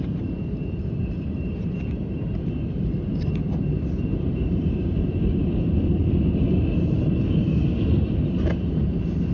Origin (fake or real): fake